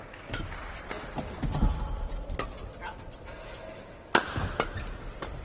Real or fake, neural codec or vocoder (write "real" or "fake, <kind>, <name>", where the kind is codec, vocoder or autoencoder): real